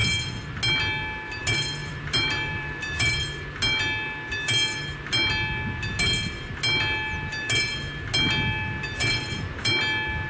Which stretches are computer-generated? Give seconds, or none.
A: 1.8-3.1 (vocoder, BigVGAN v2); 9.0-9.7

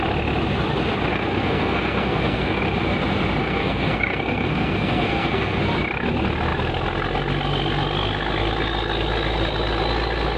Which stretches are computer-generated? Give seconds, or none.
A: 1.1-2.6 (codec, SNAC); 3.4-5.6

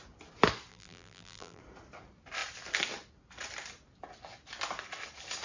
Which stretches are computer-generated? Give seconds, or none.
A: 0.7-1.6 (vocoder, BigVGAN v2)